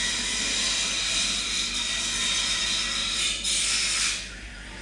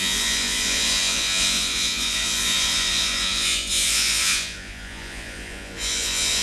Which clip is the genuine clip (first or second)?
first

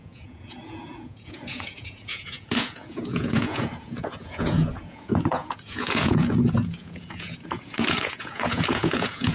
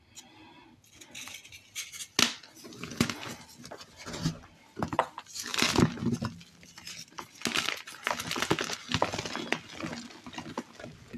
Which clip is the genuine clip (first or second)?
second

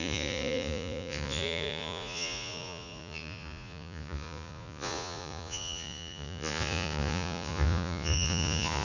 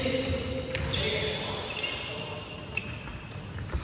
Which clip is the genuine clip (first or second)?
second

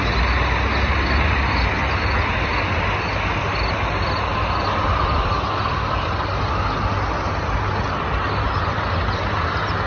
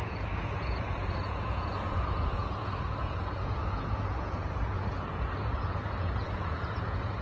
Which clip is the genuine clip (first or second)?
first